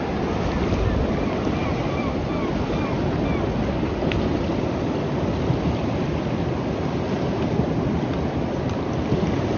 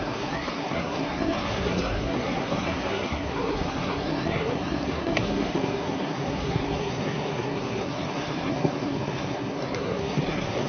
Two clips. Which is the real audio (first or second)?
first